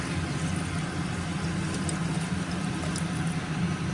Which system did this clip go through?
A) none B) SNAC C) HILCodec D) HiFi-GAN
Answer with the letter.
A